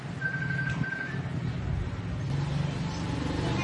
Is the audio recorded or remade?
recorded